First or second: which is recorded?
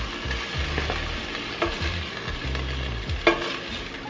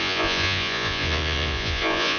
first